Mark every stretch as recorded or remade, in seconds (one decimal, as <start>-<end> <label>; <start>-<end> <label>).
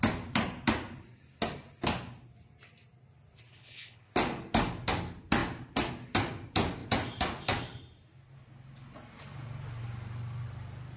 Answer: 0.0-3.5 recorded; 3.5-4.1 remade; 4.1-11.0 recorded